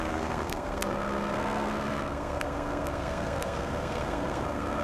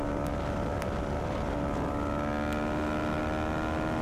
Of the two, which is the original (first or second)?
second